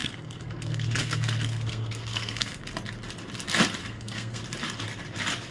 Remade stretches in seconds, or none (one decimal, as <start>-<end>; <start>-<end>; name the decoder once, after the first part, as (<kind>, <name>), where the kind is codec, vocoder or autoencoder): 0.0-2.6 (codec, SNAC); 3.8-4.4

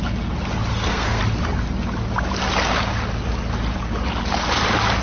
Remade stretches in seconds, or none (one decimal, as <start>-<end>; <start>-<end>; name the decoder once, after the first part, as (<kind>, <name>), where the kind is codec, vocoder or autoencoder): 0.7-1.2 (codec, SNAC)

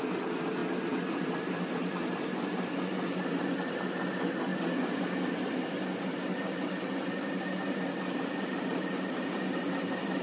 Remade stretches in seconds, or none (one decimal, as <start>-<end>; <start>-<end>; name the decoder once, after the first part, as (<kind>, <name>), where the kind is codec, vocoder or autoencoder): none

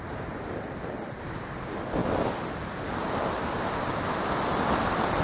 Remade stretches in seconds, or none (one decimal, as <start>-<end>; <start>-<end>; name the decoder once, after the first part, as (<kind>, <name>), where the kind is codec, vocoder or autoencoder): none

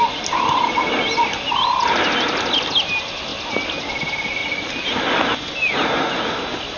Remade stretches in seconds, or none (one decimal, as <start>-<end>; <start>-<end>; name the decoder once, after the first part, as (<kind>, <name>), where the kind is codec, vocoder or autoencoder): none

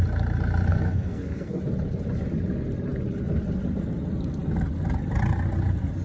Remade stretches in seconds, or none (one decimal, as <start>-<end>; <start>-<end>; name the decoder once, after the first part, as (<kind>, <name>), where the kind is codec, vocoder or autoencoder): 0.7-1.6 (codec, SNAC)